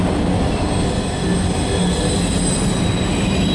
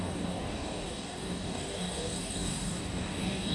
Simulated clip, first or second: second